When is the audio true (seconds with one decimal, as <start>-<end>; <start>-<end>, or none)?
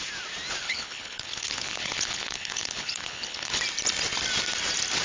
0.0-0.6; 3.6-5.0